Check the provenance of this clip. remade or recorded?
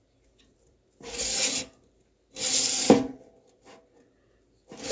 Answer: recorded